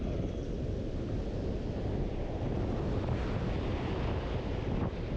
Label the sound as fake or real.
real